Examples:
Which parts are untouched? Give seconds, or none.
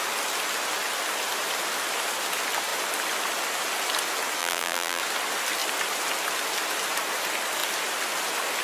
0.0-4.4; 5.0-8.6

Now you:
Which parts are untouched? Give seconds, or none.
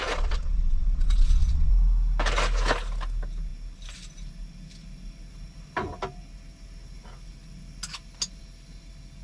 1.7-9.2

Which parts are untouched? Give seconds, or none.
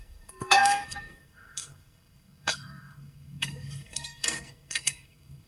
none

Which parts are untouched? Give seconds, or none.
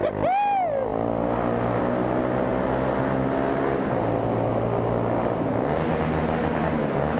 0.0-7.2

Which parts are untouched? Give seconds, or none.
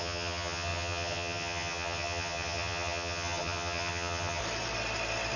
4.4-5.4